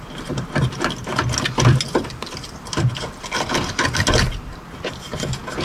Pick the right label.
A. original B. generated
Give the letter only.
A